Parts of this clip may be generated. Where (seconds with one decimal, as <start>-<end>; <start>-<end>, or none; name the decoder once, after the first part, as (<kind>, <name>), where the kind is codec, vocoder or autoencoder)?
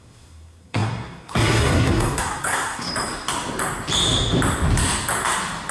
0.0-2.9 (codec, SNAC)